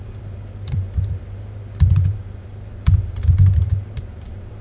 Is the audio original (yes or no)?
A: no